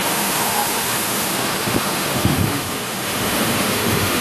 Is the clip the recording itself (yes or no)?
no